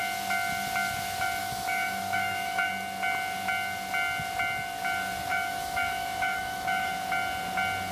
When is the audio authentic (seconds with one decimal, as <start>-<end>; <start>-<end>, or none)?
0.0-1.4; 2.7-5.3; 6.9-7.9